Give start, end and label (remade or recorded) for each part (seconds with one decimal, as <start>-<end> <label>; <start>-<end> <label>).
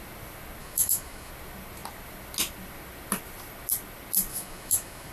0.0-0.6 recorded; 0.6-1.3 remade; 1.3-4.3 recorded; 4.3-5.1 remade